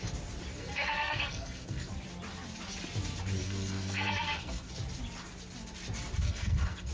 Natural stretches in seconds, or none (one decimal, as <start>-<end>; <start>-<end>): 0.0-0.5; 1.9-3.4; 4.7-6.2